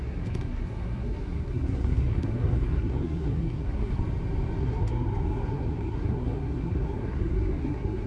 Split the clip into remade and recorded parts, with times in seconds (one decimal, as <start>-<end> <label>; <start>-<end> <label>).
0.0-4.0 remade; 4.0-4.6 recorded; 4.6-8.1 remade